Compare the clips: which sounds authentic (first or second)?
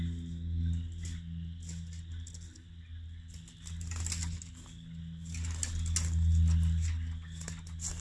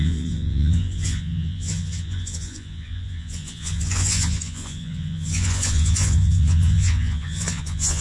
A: first